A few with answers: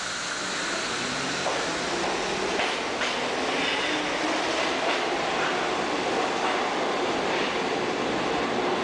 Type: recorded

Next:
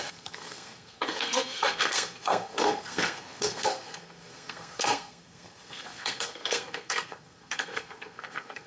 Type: remade